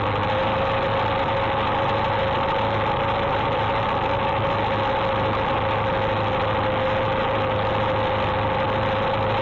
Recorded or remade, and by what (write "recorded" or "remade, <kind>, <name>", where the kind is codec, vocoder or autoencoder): recorded